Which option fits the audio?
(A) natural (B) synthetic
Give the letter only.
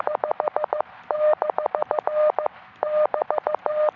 A